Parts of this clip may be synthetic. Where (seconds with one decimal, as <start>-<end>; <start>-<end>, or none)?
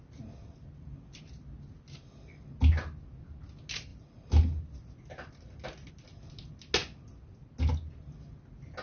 none